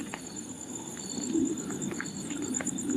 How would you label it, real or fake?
real